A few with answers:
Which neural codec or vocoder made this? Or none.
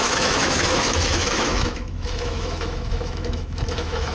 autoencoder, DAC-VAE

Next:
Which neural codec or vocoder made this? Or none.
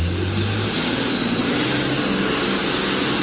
none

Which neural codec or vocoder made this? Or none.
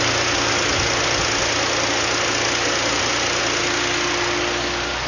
none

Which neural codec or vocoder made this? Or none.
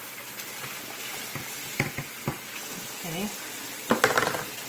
none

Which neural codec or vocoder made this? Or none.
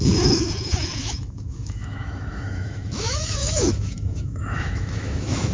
autoencoder, DAC-VAE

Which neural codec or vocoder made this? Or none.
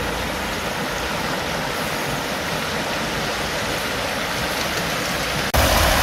none